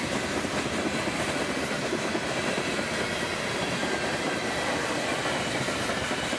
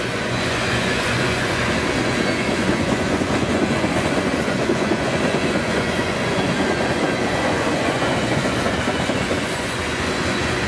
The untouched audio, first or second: first